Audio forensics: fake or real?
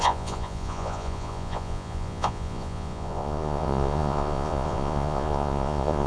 fake